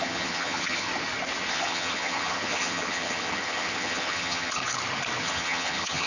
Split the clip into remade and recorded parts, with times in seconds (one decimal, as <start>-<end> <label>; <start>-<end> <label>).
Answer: 0.0-0.9 remade; 0.9-1.5 recorded; 1.5-4.6 remade; 4.6-5.2 recorded; 5.2-6.1 remade